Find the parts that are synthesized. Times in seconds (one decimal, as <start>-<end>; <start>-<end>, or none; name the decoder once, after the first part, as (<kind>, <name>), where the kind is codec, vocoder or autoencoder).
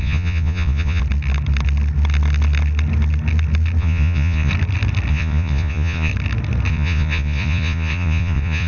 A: 0.0-1.0 (vocoder, Vocos); 3.8-4.5; 5.1-6.1; 6.7-8.7